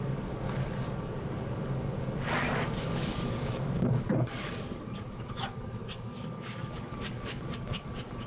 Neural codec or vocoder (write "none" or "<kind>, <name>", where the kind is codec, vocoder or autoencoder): codec, DAC